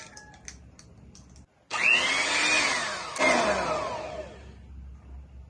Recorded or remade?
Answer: recorded